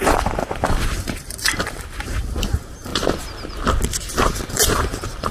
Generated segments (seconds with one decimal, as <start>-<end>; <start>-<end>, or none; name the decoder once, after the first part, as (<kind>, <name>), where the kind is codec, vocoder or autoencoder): 0.0-2.9 (vocoder, BigVGAN v2); 4.5-5.3